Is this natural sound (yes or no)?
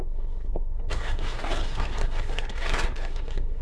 no